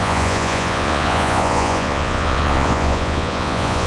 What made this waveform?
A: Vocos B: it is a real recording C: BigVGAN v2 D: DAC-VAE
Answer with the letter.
A